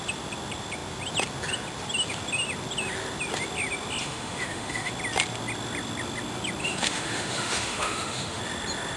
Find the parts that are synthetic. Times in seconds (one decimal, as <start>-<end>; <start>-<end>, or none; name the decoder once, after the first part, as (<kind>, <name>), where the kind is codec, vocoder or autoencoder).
4.0-4.9 (autoencoder, DAC-VAE); 6.6-8.4